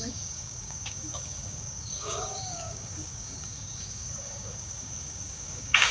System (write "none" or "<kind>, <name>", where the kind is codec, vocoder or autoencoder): codec, DAC